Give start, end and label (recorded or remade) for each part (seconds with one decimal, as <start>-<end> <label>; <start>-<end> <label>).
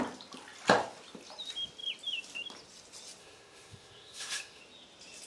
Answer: 0.0-3.2 recorded; 3.2-4.6 remade; 4.6-5.3 recorded